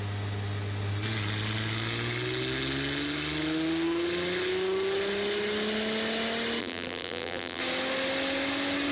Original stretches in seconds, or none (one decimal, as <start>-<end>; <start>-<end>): 0.0-6.6; 7.6-8.9